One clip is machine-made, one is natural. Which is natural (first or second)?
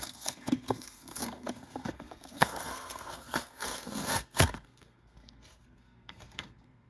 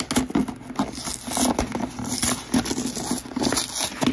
second